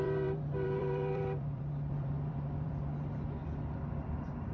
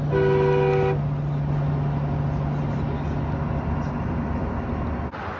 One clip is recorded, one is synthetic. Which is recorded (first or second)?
second